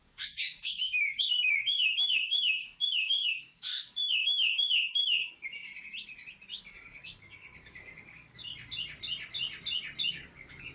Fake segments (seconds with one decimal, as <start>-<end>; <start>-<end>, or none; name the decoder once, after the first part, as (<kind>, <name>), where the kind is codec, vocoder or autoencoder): 0.0-5.7 (codec, DAC); 6.6-8.5; 10.1-10.7